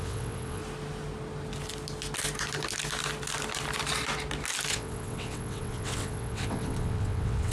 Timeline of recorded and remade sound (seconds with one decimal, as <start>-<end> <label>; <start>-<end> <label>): 0.0-0.6 remade; 0.6-4.7 recorded; 4.7-7.5 remade

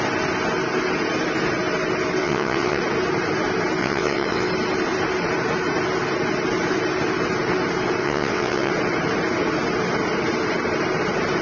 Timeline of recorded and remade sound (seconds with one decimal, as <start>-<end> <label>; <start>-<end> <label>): 0.0-2.2 recorded; 2.2-2.8 remade; 2.8-3.8 recorded; 3.8-4.5 remade; 4.5-8.0 recorded; 8.0-8.7 remade; 8.7-11.4 recorded

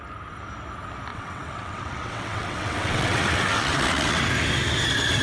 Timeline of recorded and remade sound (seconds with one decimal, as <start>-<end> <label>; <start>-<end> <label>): 0.0-1.1 recorded; 1.1-4.2 remade; 4.2-5.2 recorded

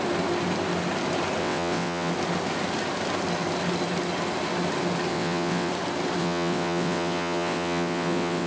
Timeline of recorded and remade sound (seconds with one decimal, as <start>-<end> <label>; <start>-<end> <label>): 0.0-1.4 recorded; 1.4-2.1 remade; 2.1-5.1 recorded; 5.1-5.7 remade; 5.7-6.2 recorded; 6.2-8.5 remade

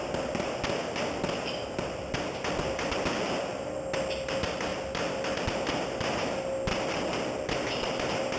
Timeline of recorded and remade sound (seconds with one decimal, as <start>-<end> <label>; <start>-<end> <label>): 0.0-8.4 recorded